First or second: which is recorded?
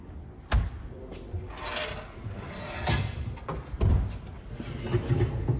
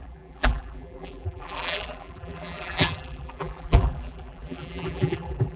first